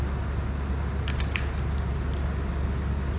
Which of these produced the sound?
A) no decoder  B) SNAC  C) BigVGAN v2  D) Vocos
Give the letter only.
A